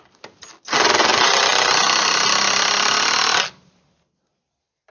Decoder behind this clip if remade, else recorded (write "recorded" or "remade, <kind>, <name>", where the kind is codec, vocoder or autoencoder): recorded